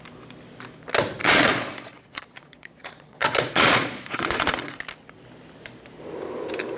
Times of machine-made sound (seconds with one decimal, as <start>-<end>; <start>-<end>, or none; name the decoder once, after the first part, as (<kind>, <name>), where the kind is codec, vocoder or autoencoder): 1.2-4.8 (vocoder, Vocos)